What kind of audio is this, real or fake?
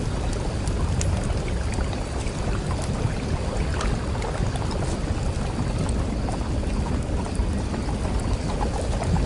real